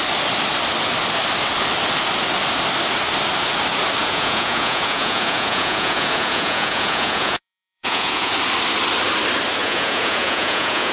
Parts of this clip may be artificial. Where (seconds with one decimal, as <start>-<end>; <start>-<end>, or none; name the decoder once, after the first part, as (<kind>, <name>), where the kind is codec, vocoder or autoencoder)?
4.0-8.3 (vocoder, Vocos); 9.6-10.9